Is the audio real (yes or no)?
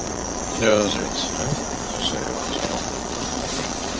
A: no